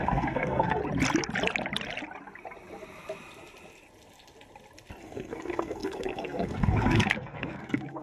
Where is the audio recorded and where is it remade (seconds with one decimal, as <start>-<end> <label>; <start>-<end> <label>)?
0.0-0.8 remade; 0.8-5.0 recorded; 5.0-8.0 remade